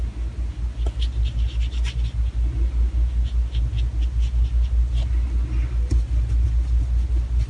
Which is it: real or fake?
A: real